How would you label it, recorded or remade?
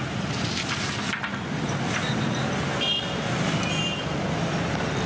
recorded